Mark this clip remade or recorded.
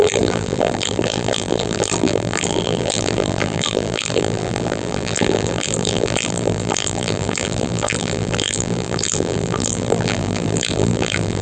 remade